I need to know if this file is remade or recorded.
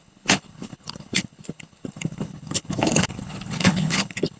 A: remade